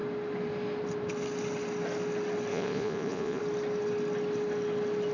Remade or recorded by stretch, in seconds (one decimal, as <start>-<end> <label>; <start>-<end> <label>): 0.0-2.5 recorded; 2.5-3.4 remade; 3.4-5.1 recorded